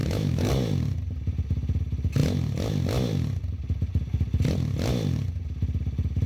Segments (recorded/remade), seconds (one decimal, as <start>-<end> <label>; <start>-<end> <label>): 0.0-0.5 remade; 0.5-6.3 recorded